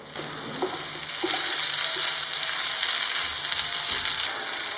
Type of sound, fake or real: real